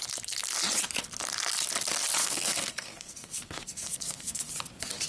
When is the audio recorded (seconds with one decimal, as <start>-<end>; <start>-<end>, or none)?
0.0-2.2; 4.5-5.1